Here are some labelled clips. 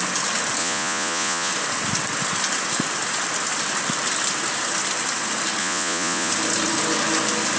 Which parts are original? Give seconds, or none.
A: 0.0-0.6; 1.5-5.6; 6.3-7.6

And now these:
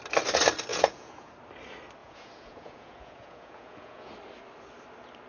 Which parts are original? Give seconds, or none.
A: 0.0-0.7; 1.3-2.0; 4.1-5.3

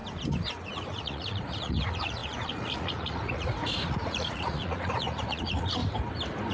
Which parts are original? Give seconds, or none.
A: 0.0-0.7; 5.8-6.5

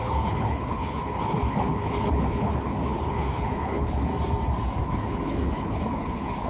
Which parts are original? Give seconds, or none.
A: 4.1-4.8

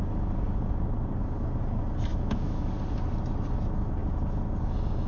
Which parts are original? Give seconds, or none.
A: 0.0-2.1; 2.7-5.1

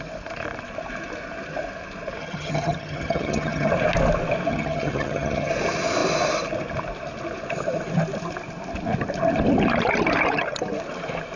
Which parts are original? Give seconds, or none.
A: 0.0-2.2; 3.7-4.5; 5.5-11.4

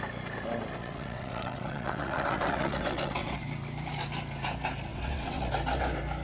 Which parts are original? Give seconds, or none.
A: 0.0-0.8; 3.4-4.9; 5.5-6.2